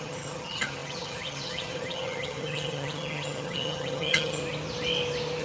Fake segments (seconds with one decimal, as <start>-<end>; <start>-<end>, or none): 0.0-4.4